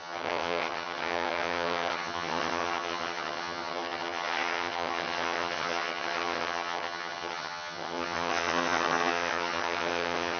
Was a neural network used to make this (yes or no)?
yes